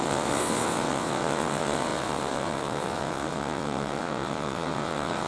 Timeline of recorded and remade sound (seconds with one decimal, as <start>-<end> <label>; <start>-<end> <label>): 0.0-5.3 remade